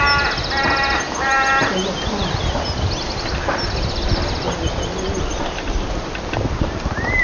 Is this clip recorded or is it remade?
recorded